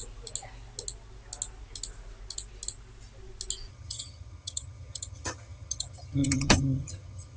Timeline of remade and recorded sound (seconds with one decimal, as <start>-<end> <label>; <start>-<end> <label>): 0.0-3.7 recorded; 3.7-7.4 remade

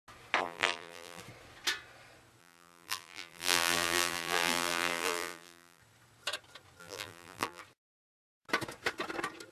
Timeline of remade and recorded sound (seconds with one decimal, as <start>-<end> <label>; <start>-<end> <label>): 0.0-0.4 recorded; 0.4-1.2 remade; 1.2-2.4 recorded; 2.4-5.8 remade; 5.8-6.8 recorded; 6.8-7.6 remade; 7.6-9.5 recorded